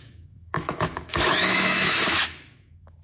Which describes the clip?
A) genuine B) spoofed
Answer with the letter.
B